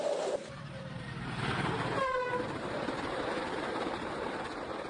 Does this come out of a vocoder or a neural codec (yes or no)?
yes